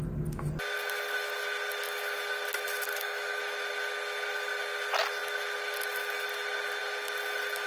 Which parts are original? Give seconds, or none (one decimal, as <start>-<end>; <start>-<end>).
0.0-2.9; 3.4-7.7